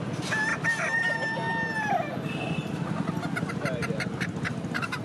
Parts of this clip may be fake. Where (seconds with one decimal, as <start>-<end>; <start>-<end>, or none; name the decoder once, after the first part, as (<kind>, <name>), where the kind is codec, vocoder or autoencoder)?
none